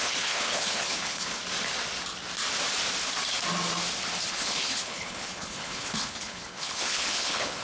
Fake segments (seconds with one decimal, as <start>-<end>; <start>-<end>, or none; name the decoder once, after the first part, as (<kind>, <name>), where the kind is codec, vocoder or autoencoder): 0.0-1.4 (codec, HILCodec); 4.2-7.6